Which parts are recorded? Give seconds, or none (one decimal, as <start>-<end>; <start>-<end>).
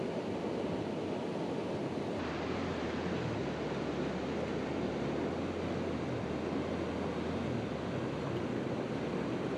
0.0-9.6